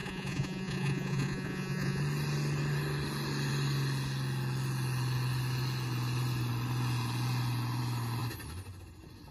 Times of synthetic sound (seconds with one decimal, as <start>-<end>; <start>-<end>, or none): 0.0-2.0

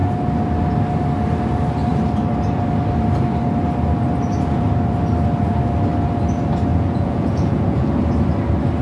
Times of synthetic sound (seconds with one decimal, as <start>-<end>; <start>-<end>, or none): 6.7-7.9

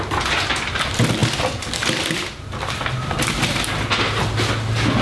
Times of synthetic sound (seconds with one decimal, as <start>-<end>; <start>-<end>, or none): none